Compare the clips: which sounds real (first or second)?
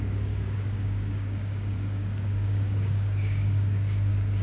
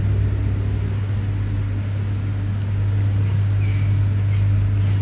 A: second